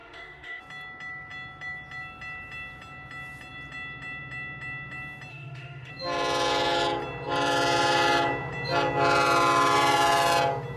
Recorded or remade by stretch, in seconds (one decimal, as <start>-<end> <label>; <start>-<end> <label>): 0.0-0.6 remade; 0.6-5.3 recorded; 5.3-5.9 remade; 5.9-10.8 recorded